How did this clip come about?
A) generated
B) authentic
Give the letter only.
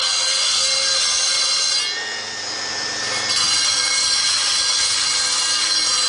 B